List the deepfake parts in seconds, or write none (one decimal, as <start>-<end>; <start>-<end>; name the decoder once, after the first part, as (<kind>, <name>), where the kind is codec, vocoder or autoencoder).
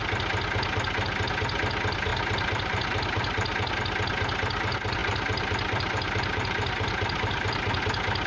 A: 2.1-3.8 (vocoder, BigVGAN v2); 5.0-7.8